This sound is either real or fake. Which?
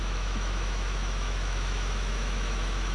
fake